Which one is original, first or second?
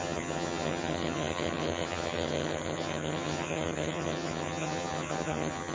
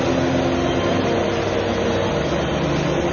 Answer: second